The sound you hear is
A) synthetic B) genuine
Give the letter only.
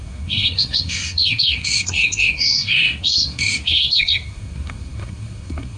A